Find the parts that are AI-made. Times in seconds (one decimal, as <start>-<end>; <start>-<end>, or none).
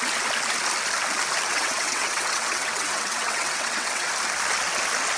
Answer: 1.5-4.1